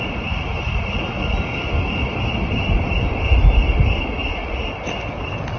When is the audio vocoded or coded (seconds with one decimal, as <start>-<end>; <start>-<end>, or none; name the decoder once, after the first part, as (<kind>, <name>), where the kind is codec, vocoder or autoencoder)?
none

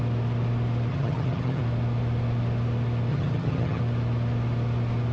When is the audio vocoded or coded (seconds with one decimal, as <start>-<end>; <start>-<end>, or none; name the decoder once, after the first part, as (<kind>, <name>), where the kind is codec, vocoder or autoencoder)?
0.9-1.6 (vocoder, HiFi-GAN); 3.1-3.8

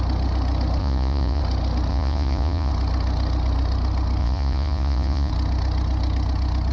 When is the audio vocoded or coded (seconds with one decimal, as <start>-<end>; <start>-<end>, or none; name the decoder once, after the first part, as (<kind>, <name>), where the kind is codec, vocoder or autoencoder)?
0.8-1.4 (vocoder, Vocos); 1.9-2.7; 4.2-5.3

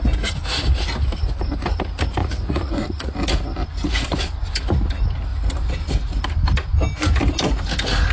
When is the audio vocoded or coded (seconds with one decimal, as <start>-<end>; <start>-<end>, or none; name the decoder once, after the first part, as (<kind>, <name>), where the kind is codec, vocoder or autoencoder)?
2.2-3.1 (vocoder, Vocos)

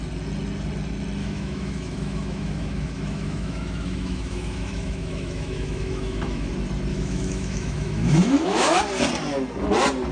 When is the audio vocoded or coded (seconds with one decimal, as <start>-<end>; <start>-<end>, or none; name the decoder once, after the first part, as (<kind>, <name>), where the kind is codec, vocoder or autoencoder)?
1.2-6.5 (autoencoder, DAC-VAE); 6.9-8.8

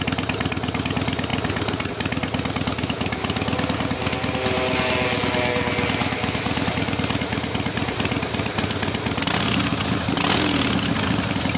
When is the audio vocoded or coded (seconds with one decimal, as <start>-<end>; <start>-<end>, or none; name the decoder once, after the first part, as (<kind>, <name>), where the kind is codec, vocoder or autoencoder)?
6.0-6.7 (autoencoder, DAC-VAE)

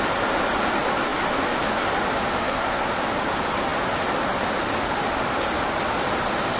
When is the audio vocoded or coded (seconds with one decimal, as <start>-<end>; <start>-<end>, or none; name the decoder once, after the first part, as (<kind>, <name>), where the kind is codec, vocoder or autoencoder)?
2.4-2.9 (codec, SNAC)

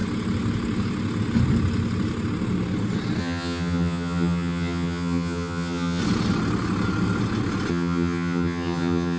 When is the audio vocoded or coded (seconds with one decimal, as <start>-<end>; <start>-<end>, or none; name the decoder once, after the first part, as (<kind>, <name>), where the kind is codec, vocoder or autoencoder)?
3.2-6.0 (vocoder, HiFi-GAN); 7.7-9.2